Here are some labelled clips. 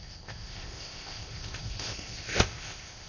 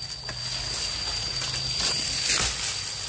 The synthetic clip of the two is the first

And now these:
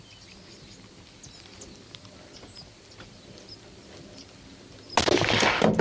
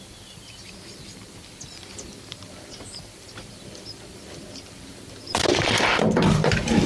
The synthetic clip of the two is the second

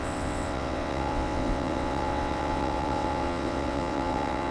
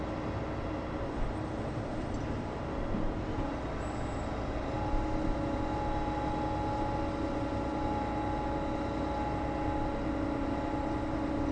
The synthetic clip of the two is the first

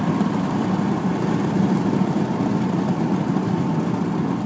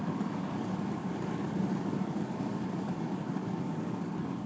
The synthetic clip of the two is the second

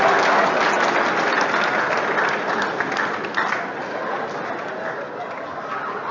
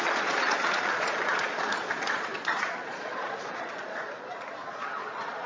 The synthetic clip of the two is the second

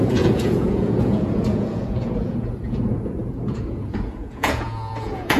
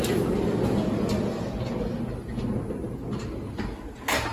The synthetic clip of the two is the first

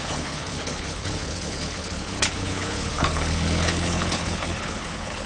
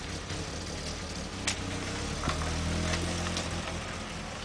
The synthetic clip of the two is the first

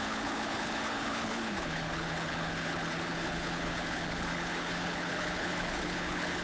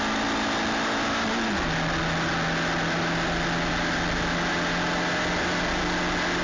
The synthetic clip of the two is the first